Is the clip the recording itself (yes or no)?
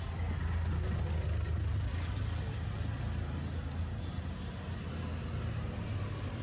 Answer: yes